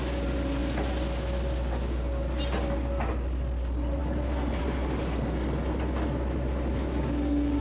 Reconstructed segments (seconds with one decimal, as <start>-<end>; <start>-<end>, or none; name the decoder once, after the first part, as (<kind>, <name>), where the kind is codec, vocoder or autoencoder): 6.8-7.6 (codec, DAC)